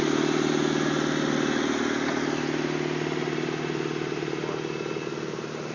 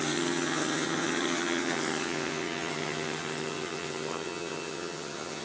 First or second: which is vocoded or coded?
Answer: second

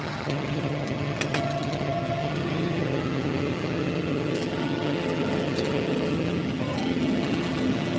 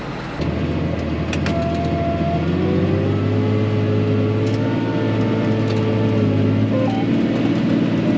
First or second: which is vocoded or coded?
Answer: first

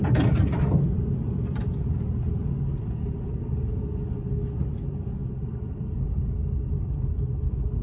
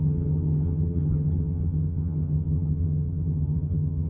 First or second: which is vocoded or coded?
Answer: second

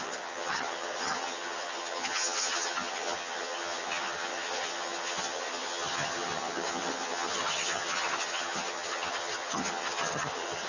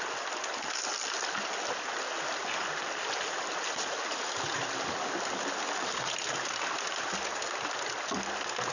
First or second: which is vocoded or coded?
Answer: first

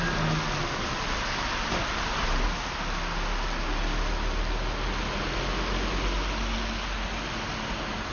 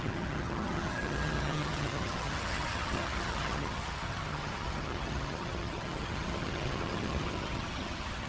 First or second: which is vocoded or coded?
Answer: second